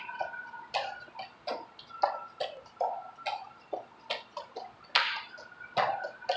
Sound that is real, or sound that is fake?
real